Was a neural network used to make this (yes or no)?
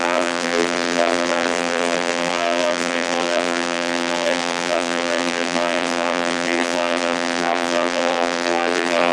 yes